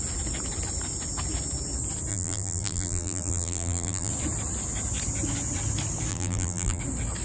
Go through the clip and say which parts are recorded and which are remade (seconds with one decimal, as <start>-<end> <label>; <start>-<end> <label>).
0.0-2.1 recorded; 2.1-4.1 remade; 4.1-6.1 recorded; 6.1-6.8 remade; 6.8-7.2 recorded